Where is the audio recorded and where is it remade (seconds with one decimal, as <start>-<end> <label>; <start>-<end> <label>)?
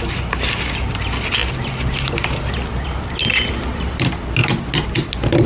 0.0-5.5 recorded